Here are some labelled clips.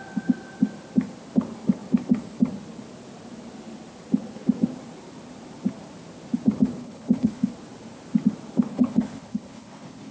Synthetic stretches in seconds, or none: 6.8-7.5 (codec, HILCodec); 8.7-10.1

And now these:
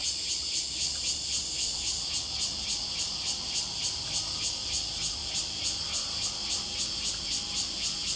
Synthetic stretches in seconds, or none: none